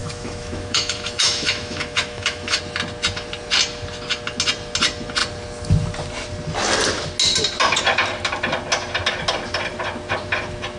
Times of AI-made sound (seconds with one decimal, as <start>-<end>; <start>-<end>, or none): 0.0-2.6